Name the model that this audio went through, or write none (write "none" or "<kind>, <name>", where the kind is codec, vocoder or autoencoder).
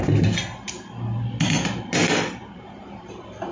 none